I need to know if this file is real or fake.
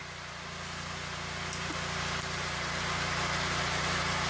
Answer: real